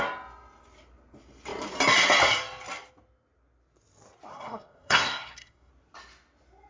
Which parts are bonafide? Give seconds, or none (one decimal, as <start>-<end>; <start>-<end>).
0.0-4.3; 5.7-6.7